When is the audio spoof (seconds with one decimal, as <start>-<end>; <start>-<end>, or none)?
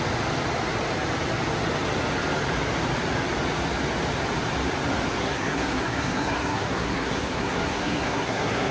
5.2-8.7